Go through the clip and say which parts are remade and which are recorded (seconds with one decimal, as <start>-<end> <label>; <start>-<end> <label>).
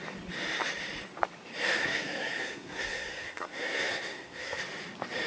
0.0-1.8 recorded; 1.8-4.6 remade; 4.6-5.3 recorded